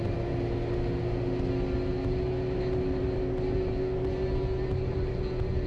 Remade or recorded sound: recorded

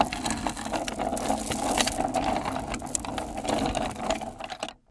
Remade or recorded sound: recorded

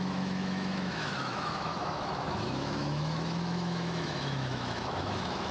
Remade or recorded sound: remade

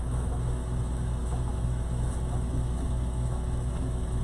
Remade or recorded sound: remade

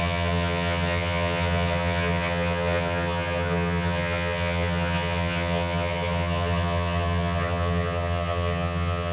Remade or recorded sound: remade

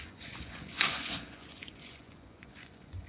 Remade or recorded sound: remade